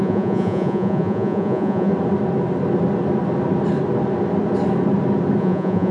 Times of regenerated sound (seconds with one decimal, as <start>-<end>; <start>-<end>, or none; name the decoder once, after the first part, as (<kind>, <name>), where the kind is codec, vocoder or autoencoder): 0.0-1.9 (vocoder, Vocos); 5.4-5.9